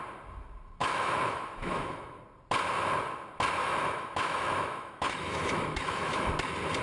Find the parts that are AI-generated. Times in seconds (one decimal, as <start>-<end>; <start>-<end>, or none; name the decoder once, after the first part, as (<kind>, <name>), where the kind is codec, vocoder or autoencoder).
0.8-2.2 (autoencoder, DAC-VAE); 3.6-6.3